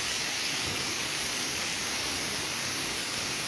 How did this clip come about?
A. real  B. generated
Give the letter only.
B